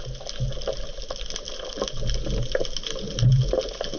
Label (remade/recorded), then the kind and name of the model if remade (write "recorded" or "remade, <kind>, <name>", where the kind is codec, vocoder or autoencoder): recorded